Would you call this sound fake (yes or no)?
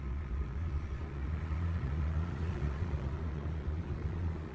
yes